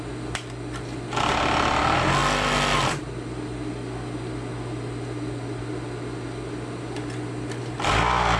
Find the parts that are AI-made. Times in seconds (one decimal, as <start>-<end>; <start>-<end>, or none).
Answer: none